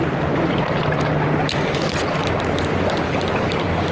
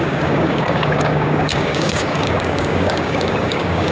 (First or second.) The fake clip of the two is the second